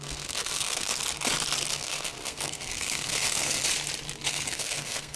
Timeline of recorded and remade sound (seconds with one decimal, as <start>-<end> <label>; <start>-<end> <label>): 0.0-0.9 remade; 0.9-1.7 recorded; 1.7-3.6 remade; 3.6-4.3 recorded; 4.3-5.2 remade

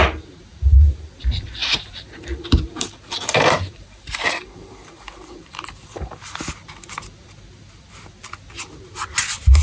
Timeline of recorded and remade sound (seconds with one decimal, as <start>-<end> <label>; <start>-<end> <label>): 0.0-1.6 recorded; 1.6-6.5 remade; 6.5-9.6 recorded

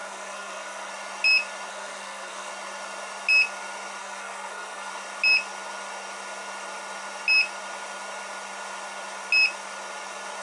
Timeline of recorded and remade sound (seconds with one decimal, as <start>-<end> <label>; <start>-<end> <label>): 0.0-0.9 remade; 0.9-1.7 recorded; 1.7-2.5 remade; 2.5-4.0 recorded; 4.0-4.9 remade; 4.9-10.4 recorded

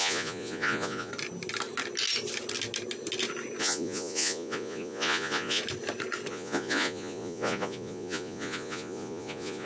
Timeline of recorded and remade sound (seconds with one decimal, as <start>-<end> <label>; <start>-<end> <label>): 0.0-1.1 remade; 1.1-3.6 recorded; 3.6-5.6 remade; 5.6-6.3 recorded; 6.3-9.7 remade